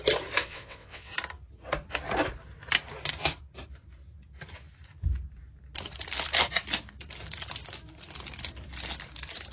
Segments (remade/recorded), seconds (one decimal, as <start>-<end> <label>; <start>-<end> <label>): 0.0-0.4 recorded; 0.4-1.1 remade; 1.1-9.5 recorded

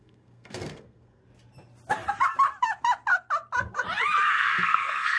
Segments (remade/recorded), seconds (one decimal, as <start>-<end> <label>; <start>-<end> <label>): 0.0-1.2 remade; 1.2-4.3 recorded; 4.3-5.2 remade

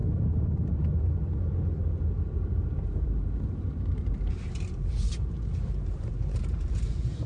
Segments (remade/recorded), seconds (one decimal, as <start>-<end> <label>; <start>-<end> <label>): 0.0-2.8 recorded; 2.8-7.3 remade

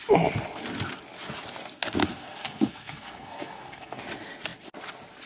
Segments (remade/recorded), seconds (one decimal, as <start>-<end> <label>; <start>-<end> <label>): 0.0-2.0 recorded; 2.0-4.0 remade; 4.0-5.3 recorded